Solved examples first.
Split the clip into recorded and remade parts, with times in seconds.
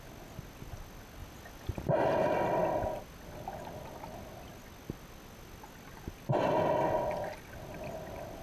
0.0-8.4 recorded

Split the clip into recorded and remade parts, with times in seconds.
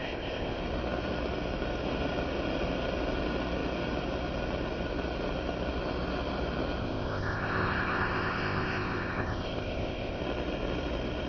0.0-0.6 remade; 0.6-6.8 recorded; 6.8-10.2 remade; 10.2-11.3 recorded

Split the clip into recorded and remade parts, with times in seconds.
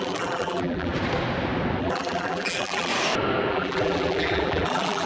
0.0-0.9 remade; 0.9-1.8 recorded; 1.8-2.9 remade; 2.9-3.5 recorded; 3.5-5.1 remade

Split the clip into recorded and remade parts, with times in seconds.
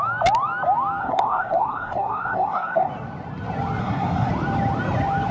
0.0-1.0 recorded; 1.0-2.9 remade; 2.9-3.8 recorded; 3.8-4.3 remade; 4.3-5.3 recorded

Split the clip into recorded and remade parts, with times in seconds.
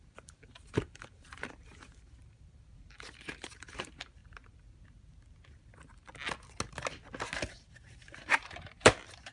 0.0-4.2 remade; 4.2-7.5 recorded; 7.5-9.3 remade